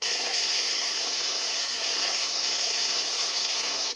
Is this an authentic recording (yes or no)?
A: no